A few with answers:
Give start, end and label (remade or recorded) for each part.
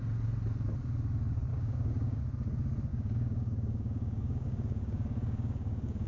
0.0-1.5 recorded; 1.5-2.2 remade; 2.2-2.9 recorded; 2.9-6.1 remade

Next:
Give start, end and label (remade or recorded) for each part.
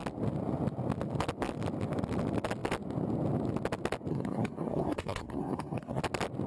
0.0-4.1 recorded; 4.1-6.0 remade; 6.0-6.5 recorded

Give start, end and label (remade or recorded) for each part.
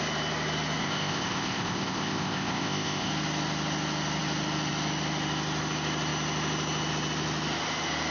0.0-0.8 recorded; 0.8-3.1 remade; 3.1-8.1 recorded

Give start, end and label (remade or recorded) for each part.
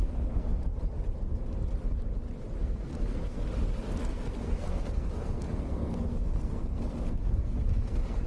0.0-0.7 remade; 0.7-2.6 recorded; 2.6-3.4 remade; 3.4-4.0 recorded; 4.0-8.3 remade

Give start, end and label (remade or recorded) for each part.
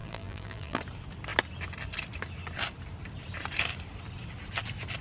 0.0-0.8 remade; 0.8-5.0 recorded